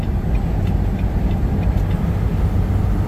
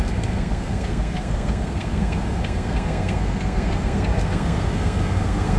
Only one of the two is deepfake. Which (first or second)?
second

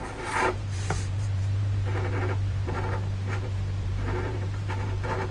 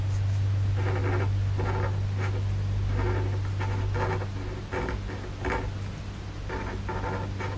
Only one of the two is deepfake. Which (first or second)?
first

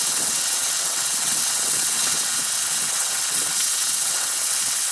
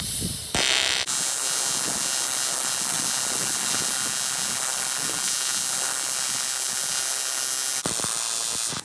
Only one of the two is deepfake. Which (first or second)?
first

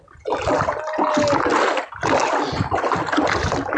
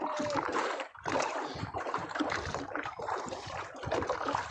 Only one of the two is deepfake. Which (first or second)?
second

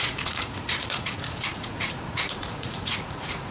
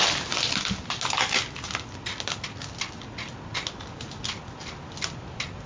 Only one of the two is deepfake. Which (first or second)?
first